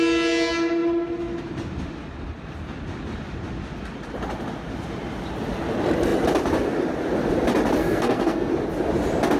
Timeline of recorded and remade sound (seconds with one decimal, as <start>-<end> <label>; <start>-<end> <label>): 0.0-7.8 recorded; 7.8-8.5 remade; 8.5-9.4 recorded